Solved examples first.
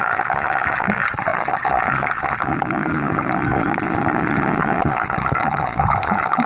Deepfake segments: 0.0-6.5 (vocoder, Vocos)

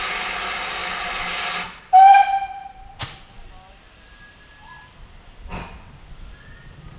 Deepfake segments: none